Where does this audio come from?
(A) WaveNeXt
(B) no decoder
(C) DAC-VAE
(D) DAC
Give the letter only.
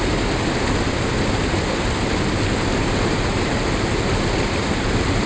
B